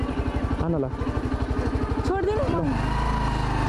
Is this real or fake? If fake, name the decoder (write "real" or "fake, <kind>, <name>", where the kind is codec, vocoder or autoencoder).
real